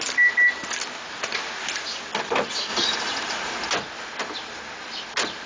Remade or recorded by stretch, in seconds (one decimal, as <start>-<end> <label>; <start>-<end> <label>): 0.0-2.7 recorded; 2.7-3.7 remade; 3.7-5.5 recorded